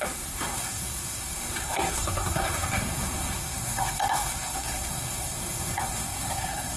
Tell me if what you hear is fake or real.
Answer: fake